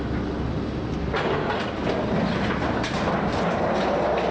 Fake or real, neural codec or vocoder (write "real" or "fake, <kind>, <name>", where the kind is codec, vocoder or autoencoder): real